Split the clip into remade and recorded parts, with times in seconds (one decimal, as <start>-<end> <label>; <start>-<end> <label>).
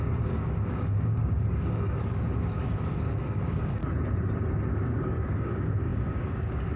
0.0-3.8 remade; 3.8-4.7 recorded; 4.7-6.8 remade